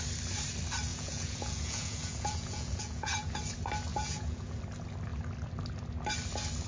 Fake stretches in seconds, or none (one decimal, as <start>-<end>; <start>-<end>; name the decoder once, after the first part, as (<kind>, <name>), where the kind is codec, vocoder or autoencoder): 0.9-3.3 (vocoder, Vocos); 3.9-4.6